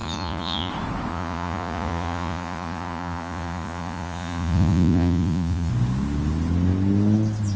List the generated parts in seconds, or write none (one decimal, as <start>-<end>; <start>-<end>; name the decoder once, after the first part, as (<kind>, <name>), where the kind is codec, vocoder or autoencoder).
0.0-0.7 (vocoder, Vocos); 1.1-5.7